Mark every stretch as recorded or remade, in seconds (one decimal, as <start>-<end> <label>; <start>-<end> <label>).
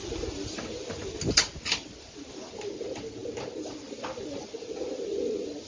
0.0-5.7 recorded